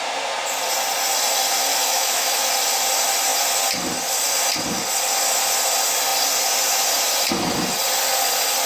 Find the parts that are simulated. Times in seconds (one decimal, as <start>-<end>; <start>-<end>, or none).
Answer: 1.7-2.5